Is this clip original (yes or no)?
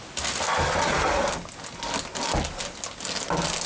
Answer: yes